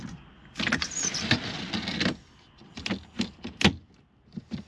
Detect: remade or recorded recorded